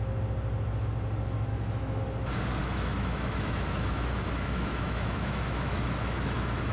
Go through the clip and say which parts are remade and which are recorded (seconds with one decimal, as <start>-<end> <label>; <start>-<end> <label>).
0.0-1.5 recorded; 1.5-2.0 remade; 2.0-2.6 recorded; 2.6-6.7 remade